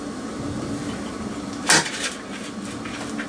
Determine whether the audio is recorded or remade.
recorded